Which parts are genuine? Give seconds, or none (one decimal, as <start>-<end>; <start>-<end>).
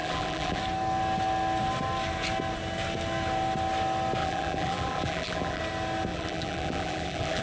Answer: 0.6-4.2; 5.6-6.1